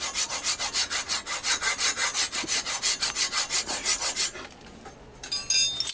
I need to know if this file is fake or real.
real